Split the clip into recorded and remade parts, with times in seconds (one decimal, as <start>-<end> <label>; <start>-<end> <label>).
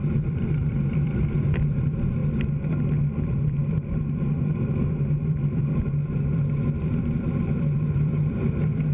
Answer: 0.0-2.2 remade; 2.2-3.2 recorded; 3.2-8.9 remade